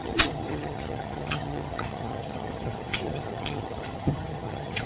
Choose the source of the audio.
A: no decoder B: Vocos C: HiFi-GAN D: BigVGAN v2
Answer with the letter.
C